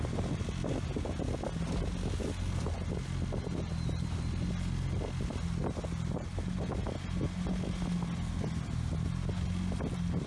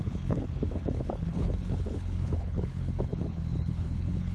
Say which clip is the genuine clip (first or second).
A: first